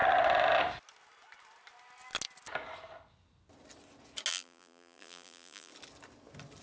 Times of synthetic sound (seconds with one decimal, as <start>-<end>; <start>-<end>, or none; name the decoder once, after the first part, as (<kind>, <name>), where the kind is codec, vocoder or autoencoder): 4.3-5.7 (vocoder, BigVGAN v2)